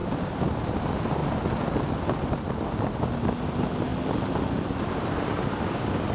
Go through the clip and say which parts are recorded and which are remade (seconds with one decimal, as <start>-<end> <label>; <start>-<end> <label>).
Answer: 0.0-6.1 recorded